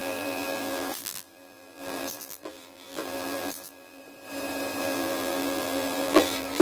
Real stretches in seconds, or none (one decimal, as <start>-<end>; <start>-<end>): 4.0-4.8